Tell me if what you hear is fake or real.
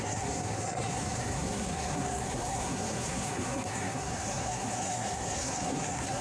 fake